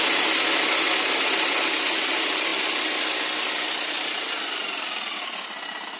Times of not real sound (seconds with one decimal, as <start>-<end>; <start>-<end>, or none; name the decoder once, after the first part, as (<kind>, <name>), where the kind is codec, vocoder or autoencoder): none